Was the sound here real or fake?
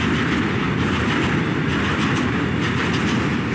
real